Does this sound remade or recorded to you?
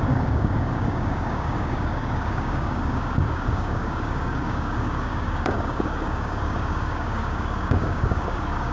remade